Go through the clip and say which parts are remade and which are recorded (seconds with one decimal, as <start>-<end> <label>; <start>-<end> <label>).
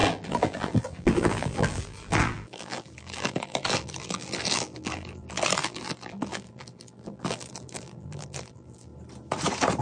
0.0-8.9 remade; 8.9-9.8 recorded